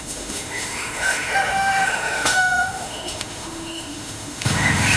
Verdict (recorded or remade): remade